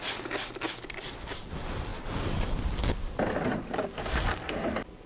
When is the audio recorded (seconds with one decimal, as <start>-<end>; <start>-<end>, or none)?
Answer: 0.0-5.1